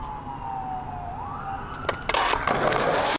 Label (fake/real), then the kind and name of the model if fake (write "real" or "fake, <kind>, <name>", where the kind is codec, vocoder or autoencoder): real